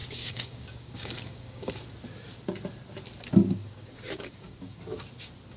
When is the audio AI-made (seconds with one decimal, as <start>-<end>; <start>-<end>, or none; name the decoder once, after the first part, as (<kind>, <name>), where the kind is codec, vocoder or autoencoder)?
0.0-1.7 (codec, DAC); 3.4-4.8